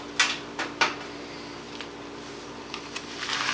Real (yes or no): yes